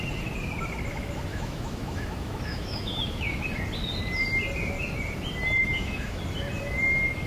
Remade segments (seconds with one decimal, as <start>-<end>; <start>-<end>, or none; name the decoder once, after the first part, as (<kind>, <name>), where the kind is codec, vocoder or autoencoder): 1.3-3.4 (autoencoder, DAC-VAE); 5.6-6.2